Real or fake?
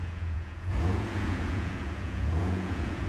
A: fake